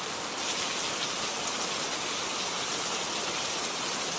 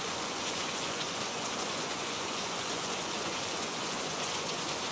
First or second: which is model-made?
second